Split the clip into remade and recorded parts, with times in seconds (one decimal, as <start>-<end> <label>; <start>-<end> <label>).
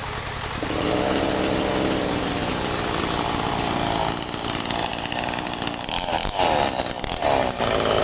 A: 0.0-8.0 recorded